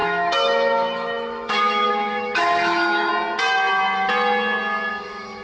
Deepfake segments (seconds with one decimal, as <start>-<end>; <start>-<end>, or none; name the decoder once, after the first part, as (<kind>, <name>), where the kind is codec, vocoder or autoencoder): 0.0-3.1 (autoencoder, DAC-VAE); 4.9-5.4